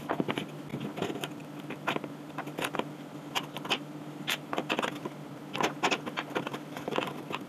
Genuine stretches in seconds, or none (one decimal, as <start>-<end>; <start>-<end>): 0.0-7.5